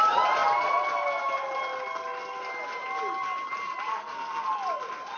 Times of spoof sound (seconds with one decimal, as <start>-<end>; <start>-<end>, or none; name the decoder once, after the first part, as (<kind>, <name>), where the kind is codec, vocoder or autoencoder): 3.9-4.5 (codec, SNAC)